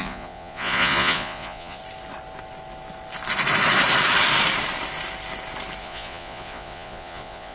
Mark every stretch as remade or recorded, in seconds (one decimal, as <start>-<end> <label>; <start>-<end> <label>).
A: 0.0-1.8 remade; 1.8-5.8 recorded; 5.8-7.5 remade